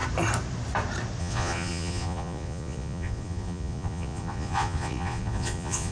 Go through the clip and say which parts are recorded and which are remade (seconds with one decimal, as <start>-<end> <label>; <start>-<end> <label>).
0.0-1.2 recorded; 1.2-5.9 remade

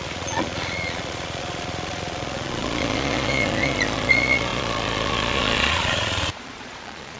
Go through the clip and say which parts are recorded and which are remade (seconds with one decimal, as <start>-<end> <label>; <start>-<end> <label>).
0.0-7.2 remade

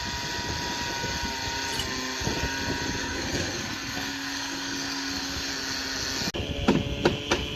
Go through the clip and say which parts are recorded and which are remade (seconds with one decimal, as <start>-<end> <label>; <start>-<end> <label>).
0.0-3.0 recorded; 3.0-5.5 remade; 5.5-7.6 recorded

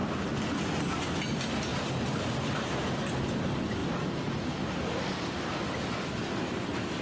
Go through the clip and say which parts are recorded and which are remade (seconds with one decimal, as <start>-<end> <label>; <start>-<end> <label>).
0.0-7.0 recorded

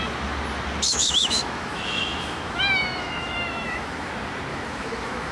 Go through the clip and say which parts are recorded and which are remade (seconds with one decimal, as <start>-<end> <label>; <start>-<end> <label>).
0.0-0.9 recorded; 0.9-4.1 remade; 4.1-4.5 recorded; 4.5-5.3 remade

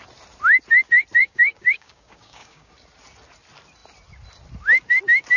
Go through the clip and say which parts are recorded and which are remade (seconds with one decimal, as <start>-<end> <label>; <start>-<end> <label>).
0.0-1.2 recorded; 1.2-2.7 remade; 2.7-5.4 recorded